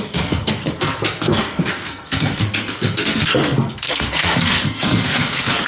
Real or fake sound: fake